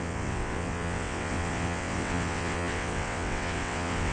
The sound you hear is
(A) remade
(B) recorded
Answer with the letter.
A